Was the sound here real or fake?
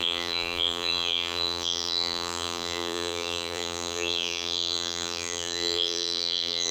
fake